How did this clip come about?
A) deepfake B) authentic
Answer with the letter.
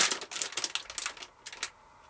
B